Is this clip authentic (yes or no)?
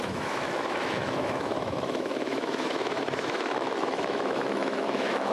no